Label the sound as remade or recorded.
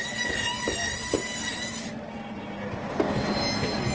recorded